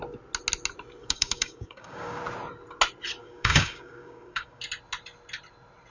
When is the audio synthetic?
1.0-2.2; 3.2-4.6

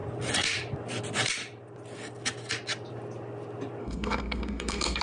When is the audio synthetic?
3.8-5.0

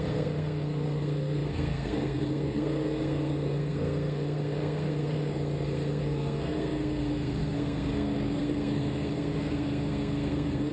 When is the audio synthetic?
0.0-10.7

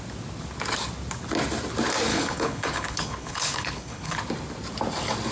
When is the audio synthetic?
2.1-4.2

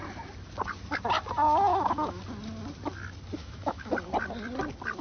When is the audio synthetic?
1.7-2.2; 3.4-3.9

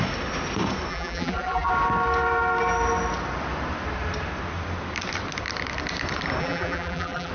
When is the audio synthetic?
0.9-1.7; 6.4-7.3

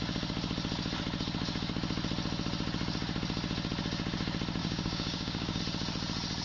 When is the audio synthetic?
4.6-5.6